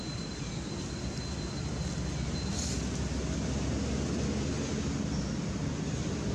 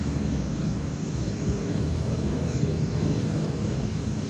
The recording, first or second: first